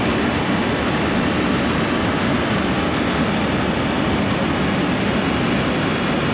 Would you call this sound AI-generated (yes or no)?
yes